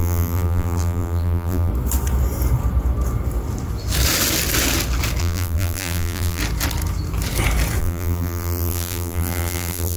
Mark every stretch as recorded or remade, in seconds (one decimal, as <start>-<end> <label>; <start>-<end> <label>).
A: 0.0-1.7 remade; 1.7-5.2 recorded; 5.2-6.4 remade; 6.4-7.8 recorded; 7.8-10.0 remade